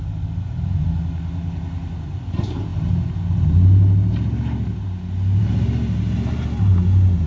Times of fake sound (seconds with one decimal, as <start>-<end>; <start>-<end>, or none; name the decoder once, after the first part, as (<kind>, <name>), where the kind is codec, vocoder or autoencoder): none